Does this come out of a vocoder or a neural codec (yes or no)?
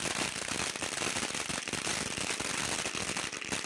no